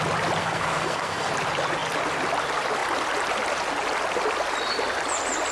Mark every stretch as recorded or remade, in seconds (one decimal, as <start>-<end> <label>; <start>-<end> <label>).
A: 0.0-0.4 recorded; 0.4-1.3 remade; 1.3-5.5 recorded